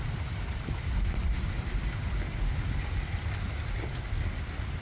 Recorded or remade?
recorded